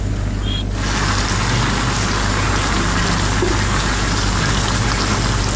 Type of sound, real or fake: real